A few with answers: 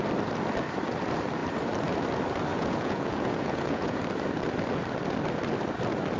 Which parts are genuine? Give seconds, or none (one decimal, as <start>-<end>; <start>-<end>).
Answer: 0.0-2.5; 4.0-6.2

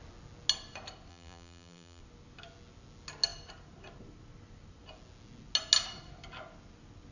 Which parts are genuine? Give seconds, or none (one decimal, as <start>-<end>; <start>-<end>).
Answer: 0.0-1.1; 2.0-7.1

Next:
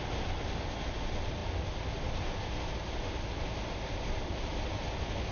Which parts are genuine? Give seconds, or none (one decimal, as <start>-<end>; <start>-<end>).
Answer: 0.0-5.3

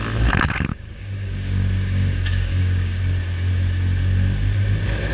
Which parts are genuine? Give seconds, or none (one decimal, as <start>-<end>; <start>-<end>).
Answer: 0.0-0.7; 3.0-5.1

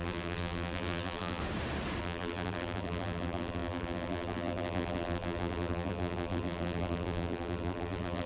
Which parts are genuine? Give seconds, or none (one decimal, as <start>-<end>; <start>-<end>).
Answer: 1.4-2.0

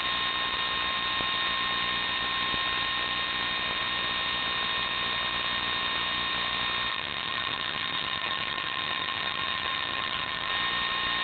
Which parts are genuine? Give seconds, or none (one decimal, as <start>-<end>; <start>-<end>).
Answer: 0.0-6.9; 10.5-11.2